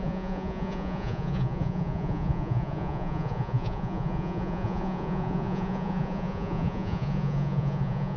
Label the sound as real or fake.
fake